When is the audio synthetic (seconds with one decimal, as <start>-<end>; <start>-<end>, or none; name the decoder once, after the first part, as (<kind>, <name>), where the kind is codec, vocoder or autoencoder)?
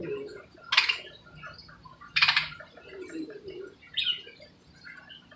0.0-0.6 (vocoder, BigVGAN v2); 1.8-5.0